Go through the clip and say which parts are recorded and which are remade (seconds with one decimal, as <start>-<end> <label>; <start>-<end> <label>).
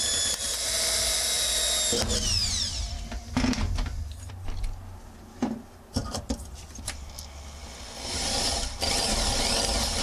0.0-2.4 recorded; 2.4-4.3 remade; 4.3-6.0 recorded; 6.0-9.3 remade; 9.3-10.0 recorded